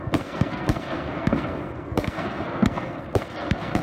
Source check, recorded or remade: remade